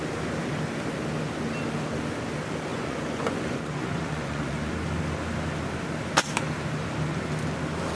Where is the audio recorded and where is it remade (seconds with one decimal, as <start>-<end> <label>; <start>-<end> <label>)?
0.0-2.7 recorded; 2.7-4.7 remade; 4.7-8.0 recorded